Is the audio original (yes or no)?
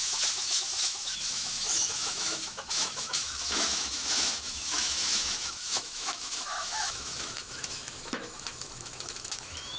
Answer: no